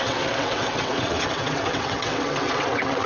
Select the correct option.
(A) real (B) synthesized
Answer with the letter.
B